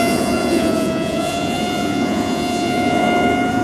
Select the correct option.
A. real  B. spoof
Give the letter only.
B